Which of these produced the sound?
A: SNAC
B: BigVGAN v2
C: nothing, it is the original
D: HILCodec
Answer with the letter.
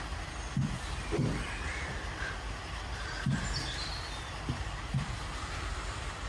C